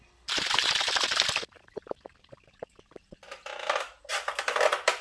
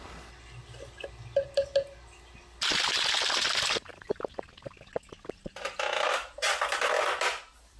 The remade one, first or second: first